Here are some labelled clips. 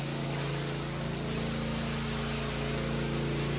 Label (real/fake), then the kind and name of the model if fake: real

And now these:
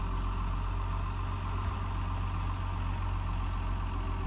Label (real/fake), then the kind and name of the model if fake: real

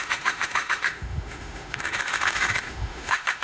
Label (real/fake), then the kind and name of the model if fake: fake, autoencoder, DAC-VAE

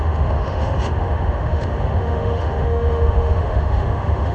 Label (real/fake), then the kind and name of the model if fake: fake, autoencoder, DAC-VAE